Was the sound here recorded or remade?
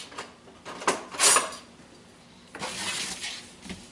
recorded